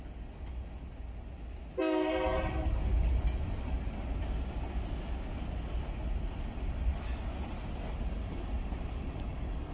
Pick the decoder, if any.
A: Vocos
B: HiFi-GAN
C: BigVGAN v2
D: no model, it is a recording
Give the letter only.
D